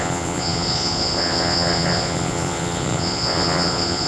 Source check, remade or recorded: remade